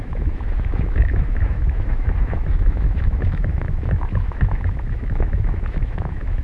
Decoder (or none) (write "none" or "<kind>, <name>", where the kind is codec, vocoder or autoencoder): autoencoder, DAC-VAE